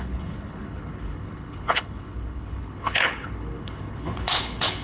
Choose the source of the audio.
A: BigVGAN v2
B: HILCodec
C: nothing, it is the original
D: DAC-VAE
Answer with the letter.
B